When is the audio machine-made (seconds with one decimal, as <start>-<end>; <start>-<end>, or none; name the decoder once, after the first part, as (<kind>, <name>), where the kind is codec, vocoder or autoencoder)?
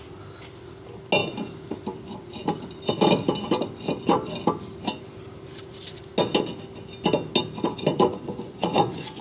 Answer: 7.9-9.2 (vocoder, Vocos)